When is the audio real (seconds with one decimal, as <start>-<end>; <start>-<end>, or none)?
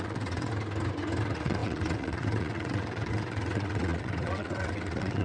0.5-1.2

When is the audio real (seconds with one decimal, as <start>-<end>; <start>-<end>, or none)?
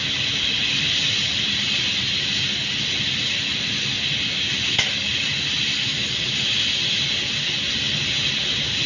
0.0-8.9